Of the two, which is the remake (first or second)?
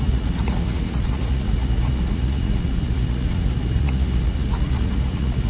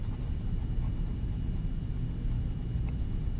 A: first